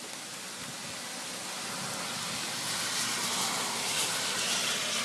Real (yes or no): yes